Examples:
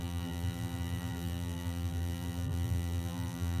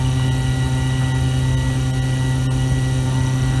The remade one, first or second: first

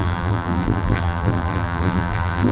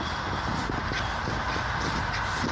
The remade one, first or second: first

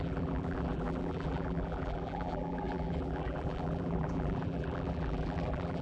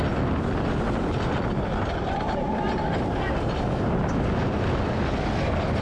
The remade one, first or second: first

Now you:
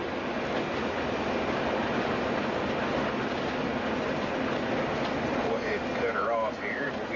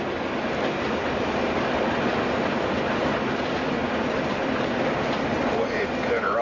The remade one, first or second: second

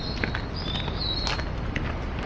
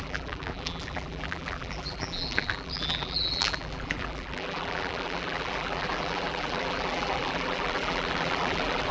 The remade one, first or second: second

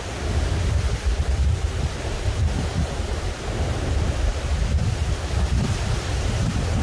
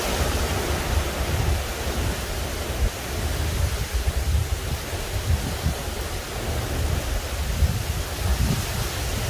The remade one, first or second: first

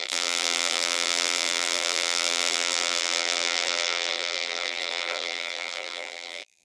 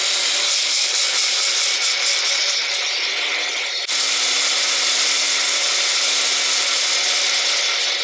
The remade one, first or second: first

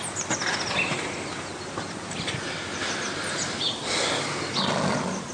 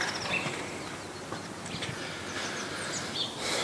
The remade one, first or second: first